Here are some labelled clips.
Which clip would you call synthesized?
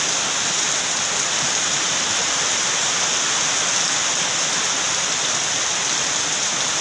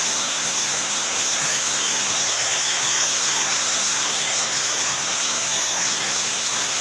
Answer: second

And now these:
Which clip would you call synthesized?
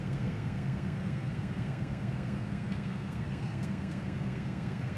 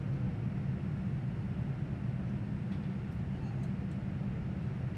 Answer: first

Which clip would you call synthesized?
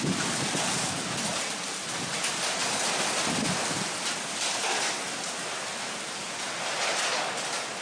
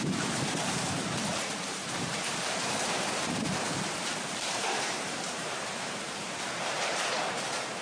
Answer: second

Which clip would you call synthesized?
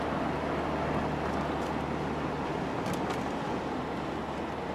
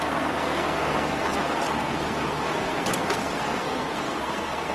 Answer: second